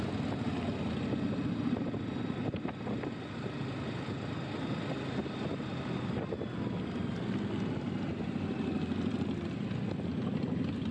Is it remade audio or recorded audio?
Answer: recorded